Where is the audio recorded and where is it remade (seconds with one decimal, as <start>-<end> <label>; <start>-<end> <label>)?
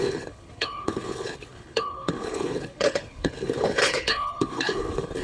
0.0-5.2 remade